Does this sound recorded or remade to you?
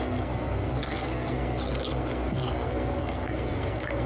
remade